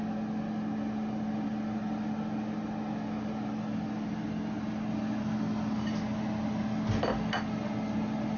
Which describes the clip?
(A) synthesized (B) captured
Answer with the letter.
B